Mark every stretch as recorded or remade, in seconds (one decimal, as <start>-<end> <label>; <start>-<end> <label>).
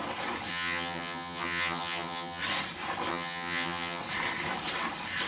0.0-0.5 recorded; 0.5-2.4 remade; 2.4-3.1 recorded; 3.1-4.0 remade; 4.0-5.3 recorded